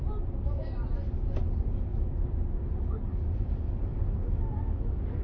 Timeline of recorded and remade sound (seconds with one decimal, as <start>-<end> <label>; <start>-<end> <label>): 0.0-1.9 recorded; 1.9-2.6 remade; 2.6-3.9 recorded; 3.9-5.2 remade